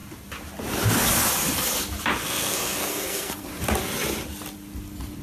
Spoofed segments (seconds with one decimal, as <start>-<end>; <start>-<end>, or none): 2.2-3.5